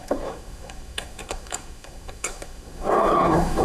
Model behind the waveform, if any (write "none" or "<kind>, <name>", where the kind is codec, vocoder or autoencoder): codec, SNAC